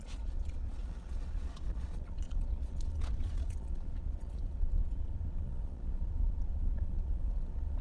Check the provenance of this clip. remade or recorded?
remade